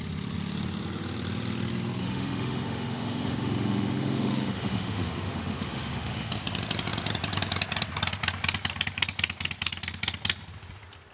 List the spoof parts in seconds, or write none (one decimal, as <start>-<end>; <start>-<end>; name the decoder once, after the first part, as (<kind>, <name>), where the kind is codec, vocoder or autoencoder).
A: 2.0-6.3 (autoencoder, DAC-VAE)